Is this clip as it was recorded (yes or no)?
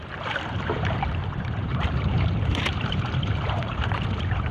no